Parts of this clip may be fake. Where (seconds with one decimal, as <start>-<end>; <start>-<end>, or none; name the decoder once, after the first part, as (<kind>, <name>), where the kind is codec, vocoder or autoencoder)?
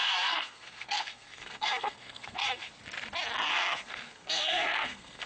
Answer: 0.0-2.7 (codec, SNAC); 3.5-5.3